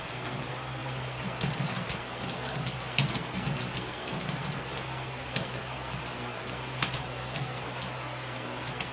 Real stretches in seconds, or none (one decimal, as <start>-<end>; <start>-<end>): none